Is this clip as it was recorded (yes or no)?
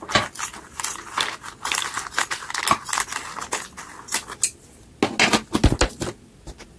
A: yes